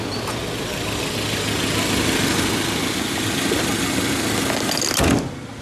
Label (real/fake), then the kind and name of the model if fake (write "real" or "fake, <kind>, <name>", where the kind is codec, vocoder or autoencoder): real